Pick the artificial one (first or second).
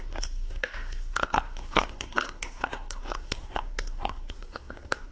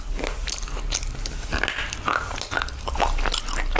first